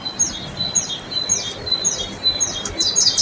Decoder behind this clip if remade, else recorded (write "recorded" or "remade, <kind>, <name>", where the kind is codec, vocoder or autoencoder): recorded